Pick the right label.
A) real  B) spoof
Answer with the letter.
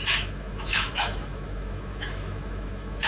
B